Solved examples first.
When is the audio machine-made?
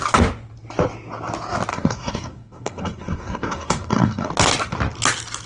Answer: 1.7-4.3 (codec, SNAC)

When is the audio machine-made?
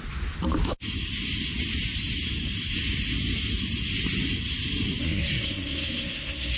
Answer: 5.0-6.6 (codec, SNAC)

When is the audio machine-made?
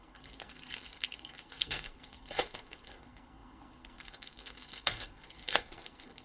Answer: 0.0-6.2 (codec, SNAC)